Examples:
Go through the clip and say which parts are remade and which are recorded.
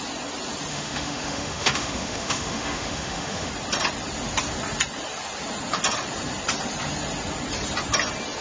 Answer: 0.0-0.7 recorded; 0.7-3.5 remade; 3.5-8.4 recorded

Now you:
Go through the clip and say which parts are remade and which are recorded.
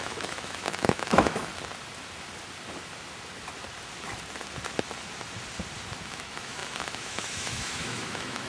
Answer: 0.0-1.5 remade; 1.5-6.0 recorded; 6.0-8.5 remade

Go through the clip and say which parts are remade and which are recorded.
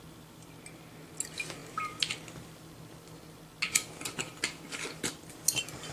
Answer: 0.0-5.9 recorded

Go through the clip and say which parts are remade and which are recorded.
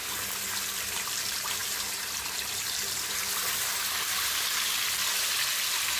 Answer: 0.0-6.0 recorded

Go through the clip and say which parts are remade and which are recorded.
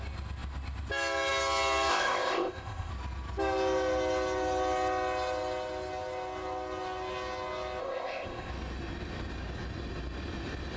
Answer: 0.0-1.9 recorded; 1.9-2.9 remade; 2.9-7.8 recorded; 7.8-8.5 remade; 8.5-10.8 recorded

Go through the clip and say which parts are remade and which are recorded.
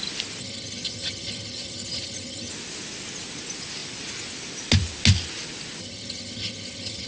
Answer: 0.0-0.4 recorded; 0.4-2.5 remade; 2.5-5.8 recorded; 5.8-7.1 remade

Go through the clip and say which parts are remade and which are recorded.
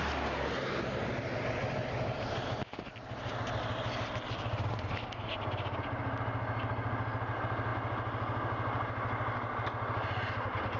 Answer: 0.0-10.8 recorded